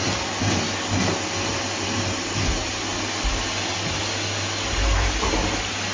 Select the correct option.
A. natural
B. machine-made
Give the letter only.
A